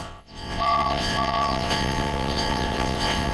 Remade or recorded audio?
remade